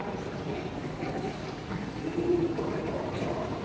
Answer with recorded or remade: remade